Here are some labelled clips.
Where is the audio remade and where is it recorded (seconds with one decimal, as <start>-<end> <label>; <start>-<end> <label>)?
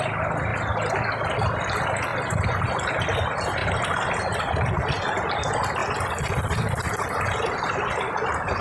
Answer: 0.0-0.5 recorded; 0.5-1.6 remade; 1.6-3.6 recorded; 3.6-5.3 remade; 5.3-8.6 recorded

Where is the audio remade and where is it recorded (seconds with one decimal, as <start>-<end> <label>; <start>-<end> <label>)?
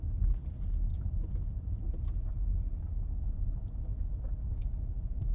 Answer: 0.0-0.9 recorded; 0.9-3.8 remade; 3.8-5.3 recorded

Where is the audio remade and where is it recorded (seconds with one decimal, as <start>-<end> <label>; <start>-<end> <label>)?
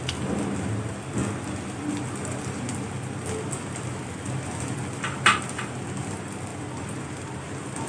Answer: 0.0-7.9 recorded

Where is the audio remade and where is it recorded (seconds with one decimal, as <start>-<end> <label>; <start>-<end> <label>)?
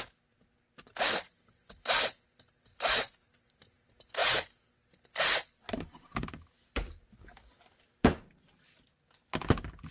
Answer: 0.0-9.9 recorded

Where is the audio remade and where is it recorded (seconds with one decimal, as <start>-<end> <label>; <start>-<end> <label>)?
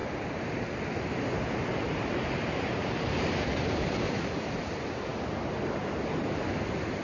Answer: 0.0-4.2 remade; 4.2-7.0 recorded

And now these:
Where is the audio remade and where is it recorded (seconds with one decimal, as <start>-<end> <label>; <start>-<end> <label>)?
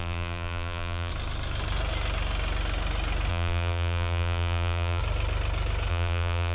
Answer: 0.0-1.1 remade; 1.1-3.3 recorded; 3.3-5.0 remade; 5.0-5.9 recorded; 5.9-6.5 remade